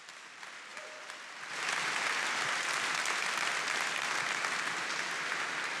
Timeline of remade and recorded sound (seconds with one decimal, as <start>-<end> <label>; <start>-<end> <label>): 0.0-5.8 recorded